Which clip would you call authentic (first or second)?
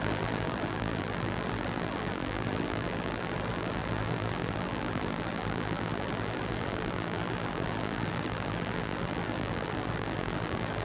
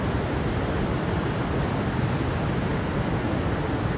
second